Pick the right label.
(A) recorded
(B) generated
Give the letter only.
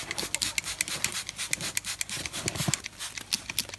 A